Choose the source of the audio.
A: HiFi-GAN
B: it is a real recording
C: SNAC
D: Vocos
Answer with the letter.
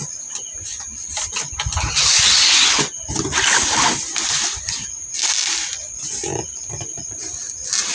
B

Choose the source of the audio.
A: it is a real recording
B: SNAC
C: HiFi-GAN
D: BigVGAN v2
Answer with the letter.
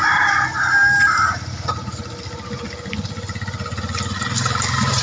A